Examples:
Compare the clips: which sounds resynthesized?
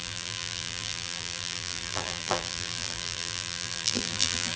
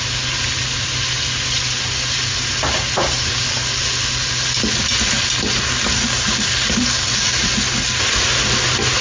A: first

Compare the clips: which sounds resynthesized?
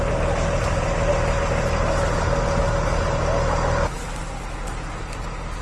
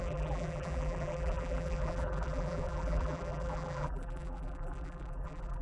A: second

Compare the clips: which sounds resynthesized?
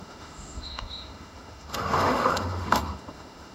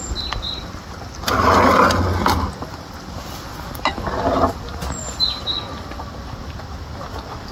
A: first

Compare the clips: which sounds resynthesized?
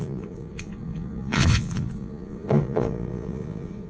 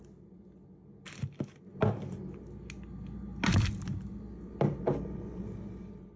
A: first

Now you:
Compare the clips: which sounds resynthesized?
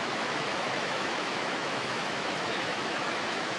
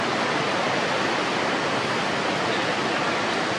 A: first